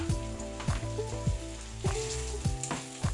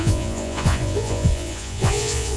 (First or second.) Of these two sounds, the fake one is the second